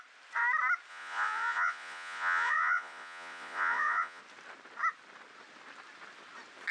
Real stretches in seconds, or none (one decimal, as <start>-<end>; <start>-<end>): 0.0-0.9; 4.2-6.7